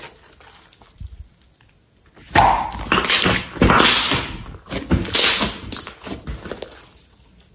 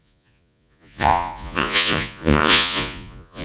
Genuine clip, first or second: first